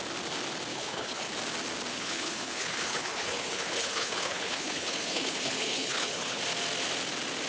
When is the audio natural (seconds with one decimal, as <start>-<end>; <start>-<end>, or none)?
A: 0.0-0.7; 1.3-1.9; 6.4-7.5